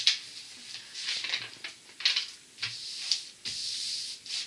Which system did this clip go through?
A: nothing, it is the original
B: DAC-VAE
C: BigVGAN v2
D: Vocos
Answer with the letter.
A